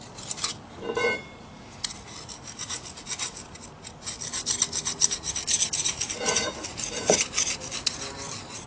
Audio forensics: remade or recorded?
recorded